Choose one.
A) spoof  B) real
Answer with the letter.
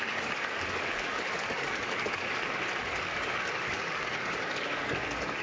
A